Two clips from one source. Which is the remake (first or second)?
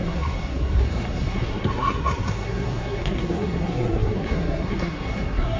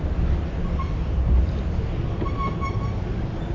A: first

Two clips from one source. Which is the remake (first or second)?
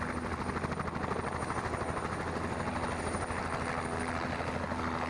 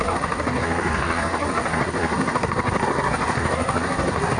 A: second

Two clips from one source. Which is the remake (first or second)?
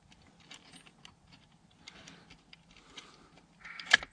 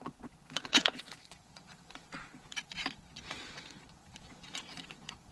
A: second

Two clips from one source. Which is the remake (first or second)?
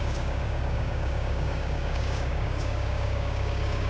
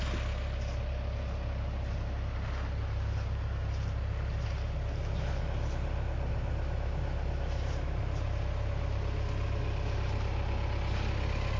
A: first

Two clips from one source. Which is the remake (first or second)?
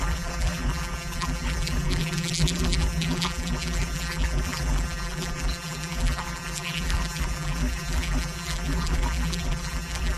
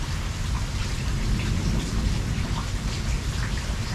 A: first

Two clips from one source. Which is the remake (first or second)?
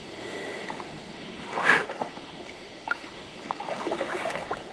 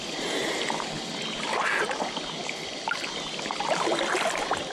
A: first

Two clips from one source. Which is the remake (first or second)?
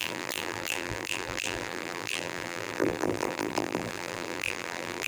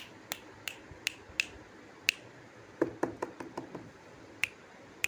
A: first